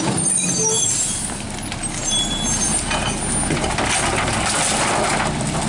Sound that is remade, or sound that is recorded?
recorded